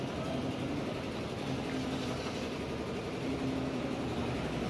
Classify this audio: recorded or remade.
recorded